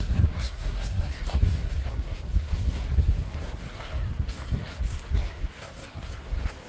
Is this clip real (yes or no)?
no